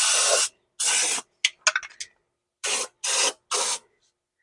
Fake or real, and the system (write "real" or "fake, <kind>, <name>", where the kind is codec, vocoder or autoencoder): real